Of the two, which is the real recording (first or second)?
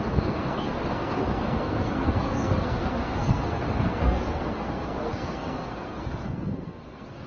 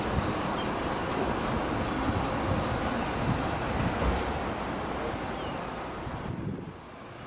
second